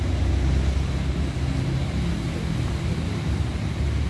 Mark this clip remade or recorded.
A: recorded